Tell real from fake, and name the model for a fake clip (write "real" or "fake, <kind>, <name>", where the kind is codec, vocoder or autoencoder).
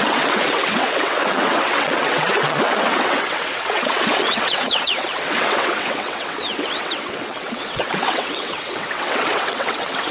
fake, vocoder, WaveNeXt